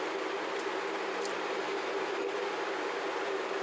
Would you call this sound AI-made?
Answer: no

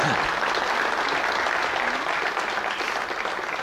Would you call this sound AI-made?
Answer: no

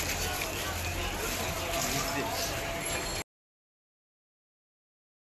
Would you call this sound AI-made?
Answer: no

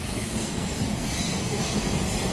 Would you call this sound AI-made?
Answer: yes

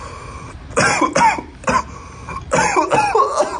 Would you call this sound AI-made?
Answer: no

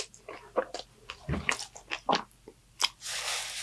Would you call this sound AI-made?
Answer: no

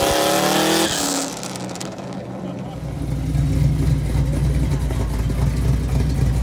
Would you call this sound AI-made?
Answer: no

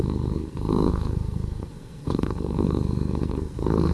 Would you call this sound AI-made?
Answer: yes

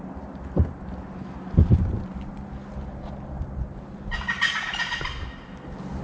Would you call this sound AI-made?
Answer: no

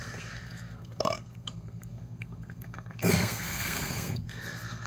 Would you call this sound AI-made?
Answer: yes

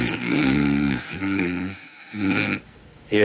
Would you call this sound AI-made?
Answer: yes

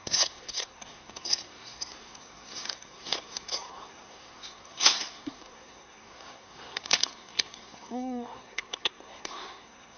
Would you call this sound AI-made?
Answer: yes